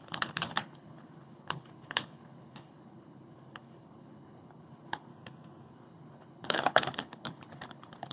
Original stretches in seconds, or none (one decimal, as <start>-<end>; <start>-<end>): 5.1-5.7